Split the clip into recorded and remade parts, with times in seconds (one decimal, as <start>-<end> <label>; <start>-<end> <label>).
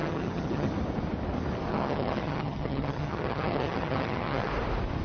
0.0-0.7 remade; 0.7-1.7 recorded; 1.7-4.5 remade; 4.5-5.0 recorded